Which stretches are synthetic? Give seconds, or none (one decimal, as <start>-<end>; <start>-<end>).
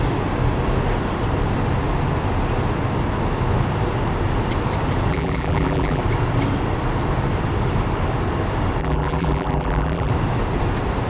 5.1-6.0; 8.8-10.1